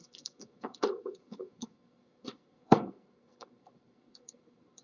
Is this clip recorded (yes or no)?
no